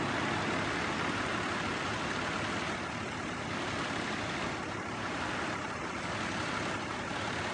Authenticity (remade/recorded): recorded